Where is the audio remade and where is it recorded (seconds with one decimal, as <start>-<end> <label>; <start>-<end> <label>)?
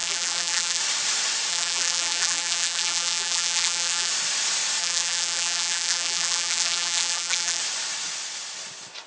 0.0-0.8 remade; 0.8-1.5 recorded; 1.5-4.1 remade; 4.1-4.8 recorded; 4.8-7.6 remade; 7.6-9.1 recorded